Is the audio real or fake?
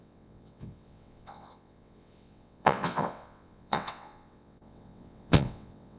fake